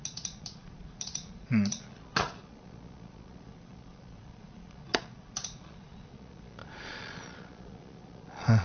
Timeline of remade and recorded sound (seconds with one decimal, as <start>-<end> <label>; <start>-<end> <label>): 0.0-8.6 remade